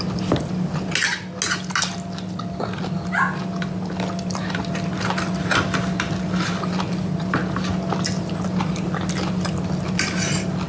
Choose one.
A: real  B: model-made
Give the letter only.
A